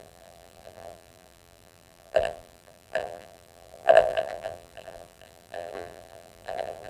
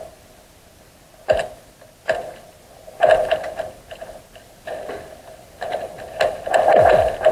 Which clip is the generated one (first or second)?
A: first